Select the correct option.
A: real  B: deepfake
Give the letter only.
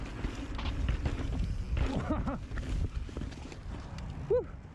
A